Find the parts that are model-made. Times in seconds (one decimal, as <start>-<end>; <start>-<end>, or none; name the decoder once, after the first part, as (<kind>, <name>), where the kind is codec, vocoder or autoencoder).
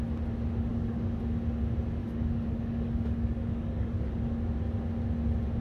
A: 0.7-1.2 (codec, DAC); 2.0-4.1